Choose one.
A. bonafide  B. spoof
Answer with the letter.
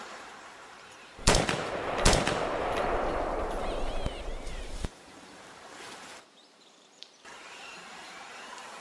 B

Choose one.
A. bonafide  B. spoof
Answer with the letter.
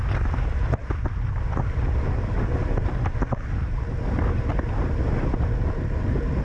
A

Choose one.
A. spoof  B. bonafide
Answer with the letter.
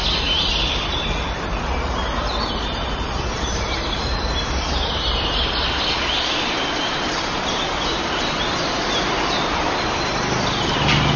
B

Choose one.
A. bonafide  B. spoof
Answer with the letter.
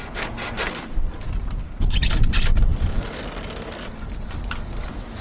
A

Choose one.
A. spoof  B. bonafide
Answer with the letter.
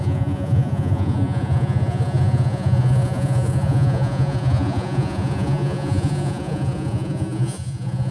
A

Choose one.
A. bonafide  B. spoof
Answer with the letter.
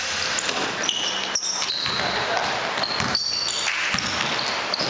A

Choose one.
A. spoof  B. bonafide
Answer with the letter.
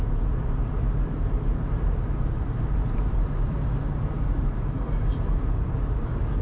A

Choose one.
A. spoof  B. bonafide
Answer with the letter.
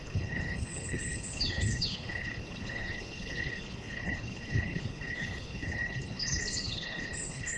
A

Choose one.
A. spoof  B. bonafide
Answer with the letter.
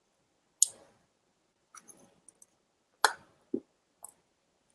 B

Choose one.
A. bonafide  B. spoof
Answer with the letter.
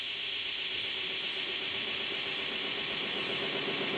A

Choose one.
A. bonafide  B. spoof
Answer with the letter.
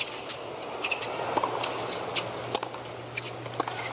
A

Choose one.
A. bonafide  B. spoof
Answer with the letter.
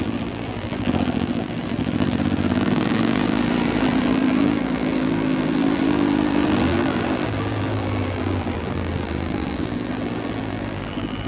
B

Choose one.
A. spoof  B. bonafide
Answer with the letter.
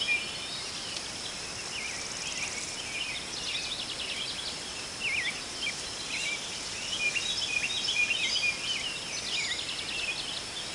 B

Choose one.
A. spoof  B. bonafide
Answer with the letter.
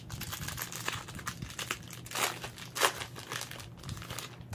B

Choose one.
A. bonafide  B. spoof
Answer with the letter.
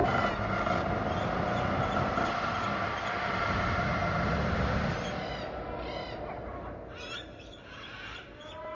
A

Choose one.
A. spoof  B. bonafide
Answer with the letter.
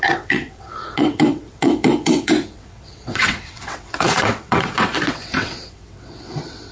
A